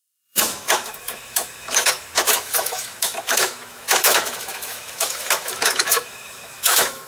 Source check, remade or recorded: remade